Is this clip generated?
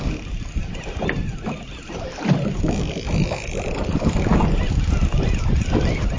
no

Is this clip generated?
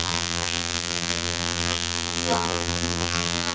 yes